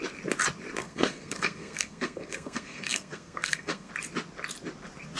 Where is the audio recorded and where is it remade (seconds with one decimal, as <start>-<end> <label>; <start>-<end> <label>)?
0.0-0.8 recorded; 0.8-3.9 remade; 3.9-5.2 recorded